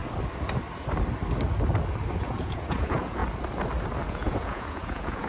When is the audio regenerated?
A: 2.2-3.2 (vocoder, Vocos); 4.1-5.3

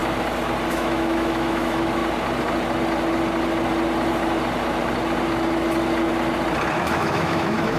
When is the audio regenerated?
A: 0.7-2.0 (autoencoder, DAC-VAE); 6.7-7.8

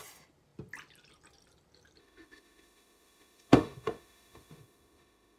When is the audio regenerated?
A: 2.0-5.4 (autoencoder, DAC-VAE)

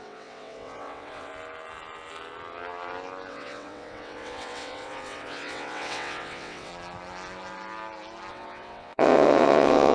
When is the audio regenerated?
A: 0.0-1.3 (vocoder, WaveNeXt); 3.3-6.7; 8.3-9.9

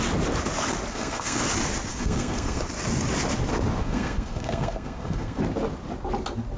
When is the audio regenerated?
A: 0.9-1.4 (codec, SNAC); 1.9-2.6; 3.8-5.4